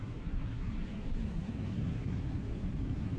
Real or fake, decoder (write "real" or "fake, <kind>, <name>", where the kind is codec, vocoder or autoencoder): fake, codec, SNAC